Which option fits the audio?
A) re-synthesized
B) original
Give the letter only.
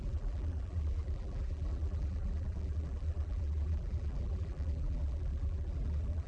A